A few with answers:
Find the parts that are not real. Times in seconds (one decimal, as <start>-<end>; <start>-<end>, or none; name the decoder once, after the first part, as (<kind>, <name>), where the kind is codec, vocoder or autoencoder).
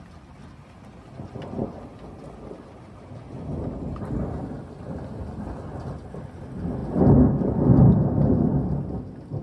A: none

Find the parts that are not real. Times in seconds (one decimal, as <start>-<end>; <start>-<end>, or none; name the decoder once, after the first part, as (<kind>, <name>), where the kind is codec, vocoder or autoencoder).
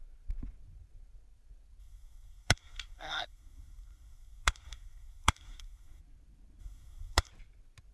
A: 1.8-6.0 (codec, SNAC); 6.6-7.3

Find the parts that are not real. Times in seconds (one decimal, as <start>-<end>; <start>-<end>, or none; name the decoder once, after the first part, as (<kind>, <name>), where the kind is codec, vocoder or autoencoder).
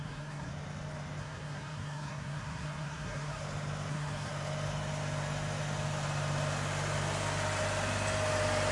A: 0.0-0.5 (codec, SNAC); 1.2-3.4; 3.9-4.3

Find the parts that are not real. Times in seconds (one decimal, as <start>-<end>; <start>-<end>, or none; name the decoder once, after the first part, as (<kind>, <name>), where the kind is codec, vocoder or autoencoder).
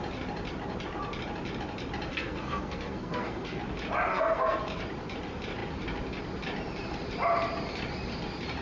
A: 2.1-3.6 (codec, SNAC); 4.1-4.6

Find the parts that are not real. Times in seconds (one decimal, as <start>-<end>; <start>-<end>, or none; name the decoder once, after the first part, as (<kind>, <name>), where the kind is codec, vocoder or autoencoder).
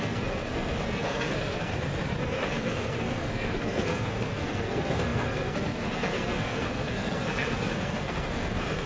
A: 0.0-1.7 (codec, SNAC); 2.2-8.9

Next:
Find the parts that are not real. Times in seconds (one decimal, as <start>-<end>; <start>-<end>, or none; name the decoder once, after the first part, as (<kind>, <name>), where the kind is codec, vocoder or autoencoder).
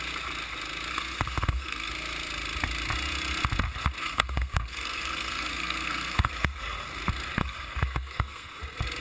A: 0.9-1.9 (codec, SNAC); 4.0-6.6; 7.4-8.6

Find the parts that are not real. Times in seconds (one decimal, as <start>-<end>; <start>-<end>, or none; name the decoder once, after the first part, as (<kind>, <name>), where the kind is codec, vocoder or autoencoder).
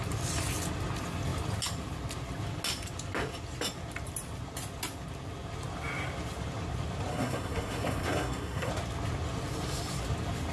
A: 7.1-8.7 (codec, SNAC)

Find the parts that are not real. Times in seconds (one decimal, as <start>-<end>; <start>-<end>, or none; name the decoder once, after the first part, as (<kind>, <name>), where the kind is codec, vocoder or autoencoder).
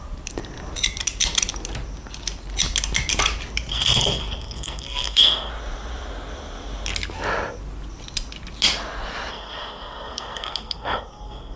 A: 3.7-5.5 (codec, SNAC); 9.3-11.6